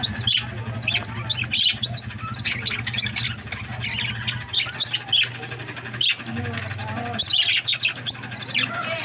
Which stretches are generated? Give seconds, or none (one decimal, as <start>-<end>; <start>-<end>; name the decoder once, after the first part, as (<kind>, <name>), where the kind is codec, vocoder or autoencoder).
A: none